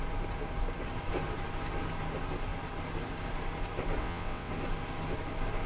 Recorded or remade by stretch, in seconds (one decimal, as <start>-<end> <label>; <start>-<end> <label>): 0.0-4.0 recorded; 4.0-4.5 remade; 4.5-5.7 recorded